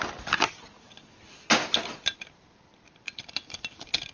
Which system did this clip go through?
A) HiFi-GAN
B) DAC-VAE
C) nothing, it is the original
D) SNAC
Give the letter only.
C